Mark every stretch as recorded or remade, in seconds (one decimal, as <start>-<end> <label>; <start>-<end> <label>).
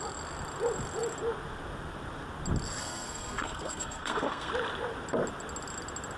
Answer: 0.0-2.8 recorded; 2.8-4.5 remade; 4.5-6.2 recorded